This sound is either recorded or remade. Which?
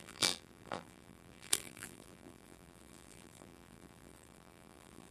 remade